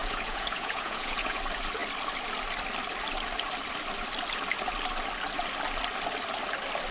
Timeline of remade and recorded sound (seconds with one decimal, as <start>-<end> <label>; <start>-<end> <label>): 0.0-1.4 remade; 1.4-6.9 recorded